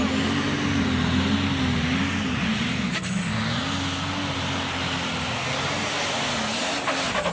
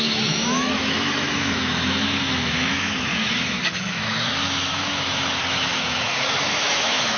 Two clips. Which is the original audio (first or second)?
first